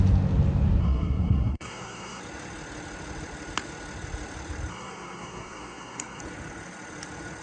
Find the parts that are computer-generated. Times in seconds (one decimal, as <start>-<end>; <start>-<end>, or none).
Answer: 0.8-2.2; 4.7-6.2

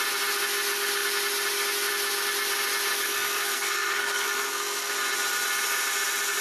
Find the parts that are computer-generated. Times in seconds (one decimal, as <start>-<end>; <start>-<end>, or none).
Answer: 3.0-4.9

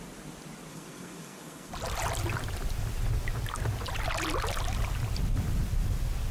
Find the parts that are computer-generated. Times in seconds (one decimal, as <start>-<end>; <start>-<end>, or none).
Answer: 0.7-1.7